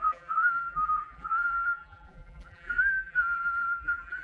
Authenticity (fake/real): fake